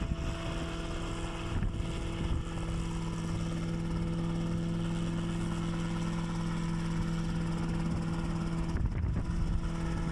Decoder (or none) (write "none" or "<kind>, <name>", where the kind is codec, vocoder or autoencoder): none